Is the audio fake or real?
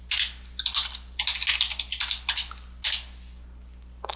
real